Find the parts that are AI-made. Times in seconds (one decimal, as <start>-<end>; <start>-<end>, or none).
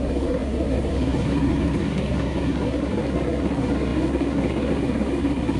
0.0-5.6